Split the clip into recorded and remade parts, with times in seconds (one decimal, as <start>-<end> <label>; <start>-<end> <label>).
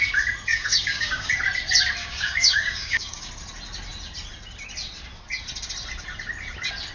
0.0-0.5 recorded; 0.5-1.3 remade; 1.3-2.0 recorded; 2.0-3.3 remade; 3.3-6.9 recorded